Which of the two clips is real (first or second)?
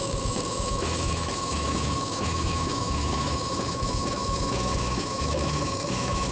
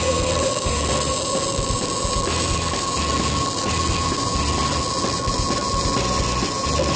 second